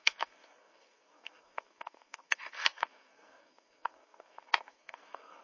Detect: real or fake fake